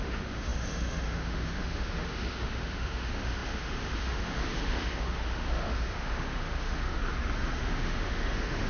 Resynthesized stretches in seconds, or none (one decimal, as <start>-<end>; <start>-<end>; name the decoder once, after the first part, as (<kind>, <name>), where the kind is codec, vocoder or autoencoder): 0.0-7.0 (autoencoder, DAC-VAE); 7.6-8.7

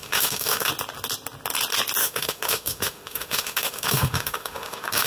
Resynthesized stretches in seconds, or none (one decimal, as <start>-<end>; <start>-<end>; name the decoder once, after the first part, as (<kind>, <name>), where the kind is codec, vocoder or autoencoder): 0.0-0.7 (autoencoder, DAC-VAE); 2.0-5.1

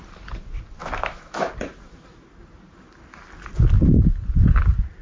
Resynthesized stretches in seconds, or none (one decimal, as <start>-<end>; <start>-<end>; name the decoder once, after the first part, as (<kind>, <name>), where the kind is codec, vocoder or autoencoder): 0.8-1.5 (autoencoder, DAC-VAE)

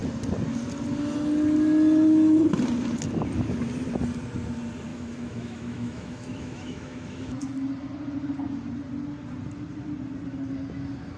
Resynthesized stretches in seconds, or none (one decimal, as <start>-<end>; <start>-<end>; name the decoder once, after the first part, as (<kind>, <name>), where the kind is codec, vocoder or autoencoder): 4.9-7.4 (autoencoder, DAC-VAE)